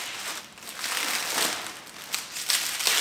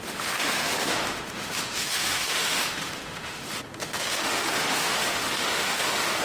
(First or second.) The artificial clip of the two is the second